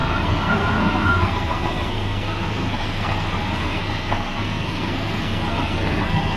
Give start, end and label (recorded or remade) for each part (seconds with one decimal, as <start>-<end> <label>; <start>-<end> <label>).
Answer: 0.0-6.4 remade